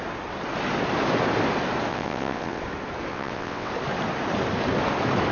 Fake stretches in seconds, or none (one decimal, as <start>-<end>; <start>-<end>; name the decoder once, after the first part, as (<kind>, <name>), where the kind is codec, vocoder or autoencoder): 1.9-2.6 (vocoder, WaveNeXt); 3.1-3.7